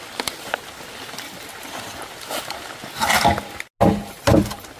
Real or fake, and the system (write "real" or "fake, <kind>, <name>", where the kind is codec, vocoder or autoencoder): real